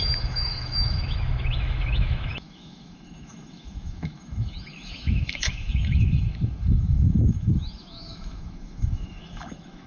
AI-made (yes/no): yes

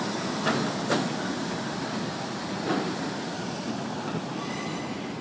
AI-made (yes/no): no